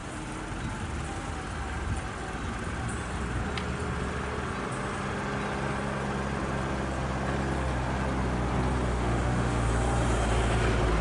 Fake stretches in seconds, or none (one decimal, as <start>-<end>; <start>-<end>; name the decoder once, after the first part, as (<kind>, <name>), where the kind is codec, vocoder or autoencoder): 8.9-9.7 (autoencoder, DAC-VAE)